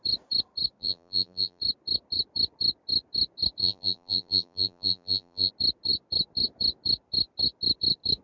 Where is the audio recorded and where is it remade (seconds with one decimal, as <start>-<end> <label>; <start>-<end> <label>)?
0.0-0.8 recorded; 0.8-1.6 remade; 1.6-3.6 recorded; 3.6-5.5 remade; 5.5-8.2 recorded